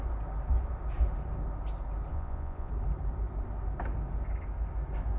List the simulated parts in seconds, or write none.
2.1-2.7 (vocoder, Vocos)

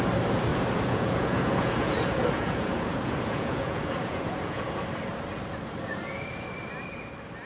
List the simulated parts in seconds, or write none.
0.5-4.8 (vocoder, Vocos)

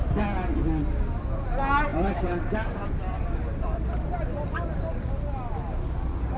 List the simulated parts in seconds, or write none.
none

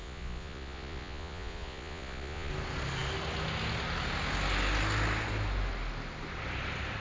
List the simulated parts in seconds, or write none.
0.0-2.5 (vocoder, Vocos)

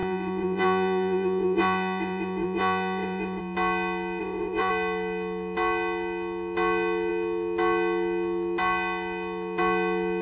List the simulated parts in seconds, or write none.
0.0-3.4 (vocoder, Vocos); 4.2-4.7

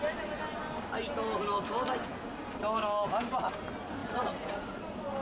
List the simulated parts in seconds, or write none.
4.0-4.8 (vocoder, Vocos)